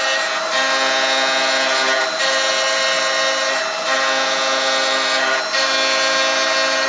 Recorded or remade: recorded